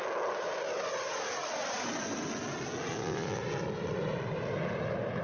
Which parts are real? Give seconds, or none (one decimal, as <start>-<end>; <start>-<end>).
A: 0.0-2.9; 3.4-5.2